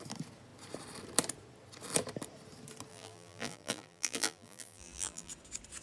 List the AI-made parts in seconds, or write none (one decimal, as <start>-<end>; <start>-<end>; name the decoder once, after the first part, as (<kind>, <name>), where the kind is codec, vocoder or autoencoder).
2.9-5.3 (vocoder, BigVGAN v2)

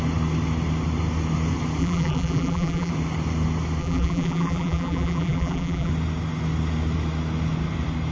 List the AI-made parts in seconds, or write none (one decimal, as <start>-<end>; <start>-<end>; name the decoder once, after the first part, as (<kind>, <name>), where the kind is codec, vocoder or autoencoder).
1.8-2.9 (vocoder, BigVGAN v2); 3.8-5.9

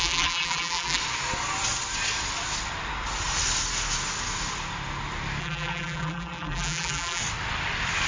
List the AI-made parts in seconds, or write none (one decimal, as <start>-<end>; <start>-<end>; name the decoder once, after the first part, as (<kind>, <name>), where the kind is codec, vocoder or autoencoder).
0.0-1.0 (vocoder, BigVGAN v2); 5.4-7.2

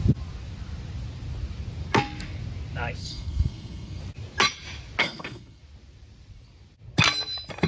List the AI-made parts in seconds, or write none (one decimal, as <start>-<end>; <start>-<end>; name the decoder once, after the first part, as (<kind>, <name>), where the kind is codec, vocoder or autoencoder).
3.0-4.0 (codec, SNAC); 5.0-5.6

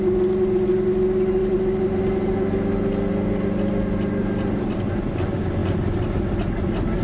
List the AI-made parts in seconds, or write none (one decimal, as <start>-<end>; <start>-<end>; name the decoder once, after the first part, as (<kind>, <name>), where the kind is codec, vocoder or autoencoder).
none

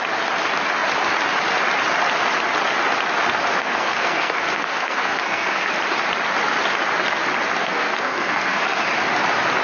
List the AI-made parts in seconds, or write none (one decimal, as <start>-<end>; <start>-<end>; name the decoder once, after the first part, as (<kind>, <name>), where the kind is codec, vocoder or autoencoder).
3.6-5.7 (codec, SNAC); 7.6-8.8